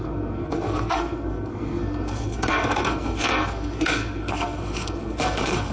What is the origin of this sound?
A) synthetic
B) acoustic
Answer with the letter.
A